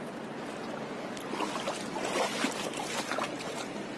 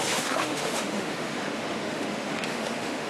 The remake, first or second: second